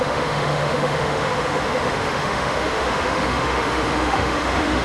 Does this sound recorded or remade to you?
remade